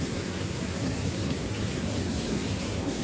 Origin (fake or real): fake